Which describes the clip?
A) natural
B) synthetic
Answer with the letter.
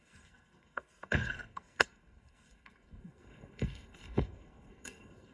B